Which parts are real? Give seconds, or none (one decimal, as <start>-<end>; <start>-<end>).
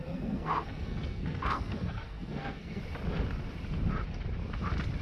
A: 2.8-5.0